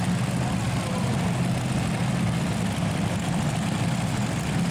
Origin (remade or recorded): recorded